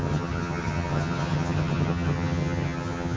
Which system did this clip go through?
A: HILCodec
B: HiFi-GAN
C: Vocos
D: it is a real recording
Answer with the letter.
B